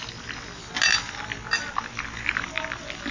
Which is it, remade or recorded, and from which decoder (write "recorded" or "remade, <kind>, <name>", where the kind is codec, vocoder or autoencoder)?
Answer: recorded